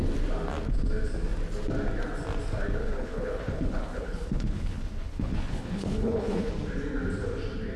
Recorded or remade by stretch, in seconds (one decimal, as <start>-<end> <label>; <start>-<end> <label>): 0.0-2.8 recorded; 2.8-6.5 remade; 6.5-7.8 recorded